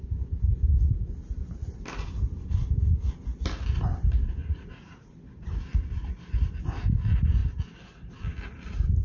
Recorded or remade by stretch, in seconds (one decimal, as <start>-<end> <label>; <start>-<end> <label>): 0.0-4.4 recorded; 4.4-5.1 remade; 5.1-9.0 recorded